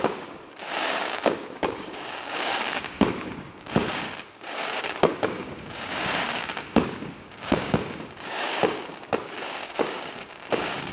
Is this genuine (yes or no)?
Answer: no